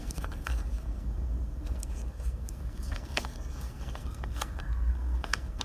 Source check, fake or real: fake